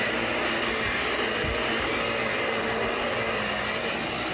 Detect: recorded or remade recorded